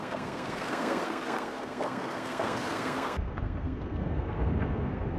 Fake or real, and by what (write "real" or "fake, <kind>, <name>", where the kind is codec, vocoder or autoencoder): fake, codec, SNAC